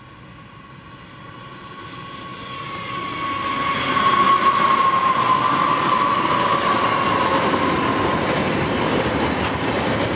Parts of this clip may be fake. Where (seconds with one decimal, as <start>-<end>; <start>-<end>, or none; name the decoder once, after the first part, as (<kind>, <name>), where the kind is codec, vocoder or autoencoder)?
none